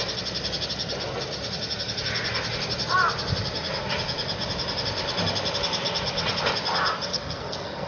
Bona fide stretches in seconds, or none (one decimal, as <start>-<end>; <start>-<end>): 0.0-7.1